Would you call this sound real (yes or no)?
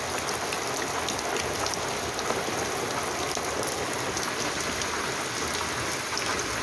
yes